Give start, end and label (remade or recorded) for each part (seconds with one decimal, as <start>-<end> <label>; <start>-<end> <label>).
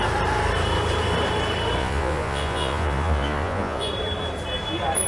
0.0-1.8 recorded; 1.8-3.9 remade; 3.9-5.1 recorded